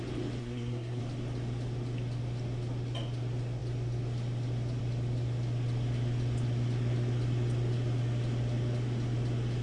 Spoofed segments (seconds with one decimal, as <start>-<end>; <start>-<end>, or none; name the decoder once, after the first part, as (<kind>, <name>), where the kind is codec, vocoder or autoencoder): 0.4-1.0 (codec, SNAC)